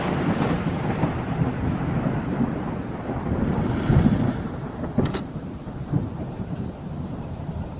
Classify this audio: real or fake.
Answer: fake